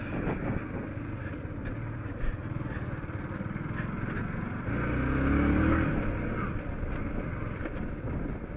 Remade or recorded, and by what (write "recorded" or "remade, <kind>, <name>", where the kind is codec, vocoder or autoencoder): recorded